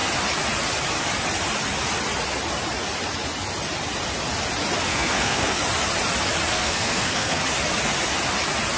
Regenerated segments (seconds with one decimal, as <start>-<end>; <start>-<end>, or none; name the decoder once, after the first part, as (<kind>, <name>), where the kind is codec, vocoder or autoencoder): 4.9-5.6 (codec, SNAC); 6.5-7.4